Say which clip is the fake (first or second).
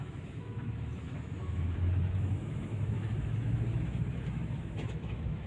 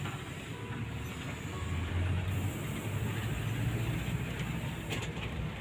first